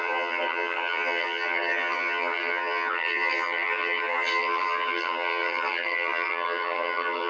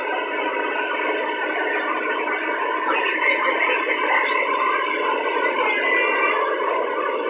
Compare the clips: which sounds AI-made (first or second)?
first